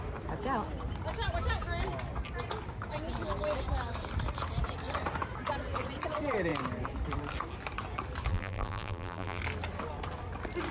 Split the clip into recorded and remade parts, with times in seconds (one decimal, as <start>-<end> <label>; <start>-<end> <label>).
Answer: 0.0-8.3 recorded; 8.3-9.4 remade; 9.4-10.7 recorded